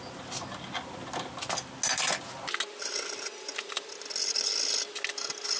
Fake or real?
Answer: real